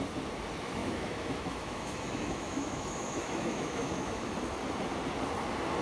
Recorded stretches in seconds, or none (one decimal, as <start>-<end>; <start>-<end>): 0.0-0.8; 4.3-5.8